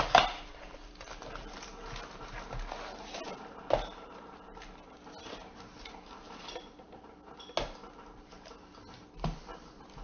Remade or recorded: recorded